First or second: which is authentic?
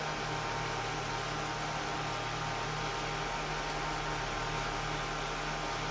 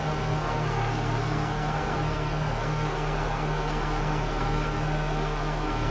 first